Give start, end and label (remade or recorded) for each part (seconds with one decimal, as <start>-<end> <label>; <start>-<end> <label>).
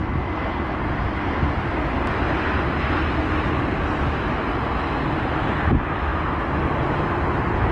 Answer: 0.0-7.7 recorded